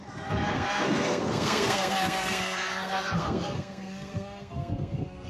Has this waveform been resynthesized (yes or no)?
yes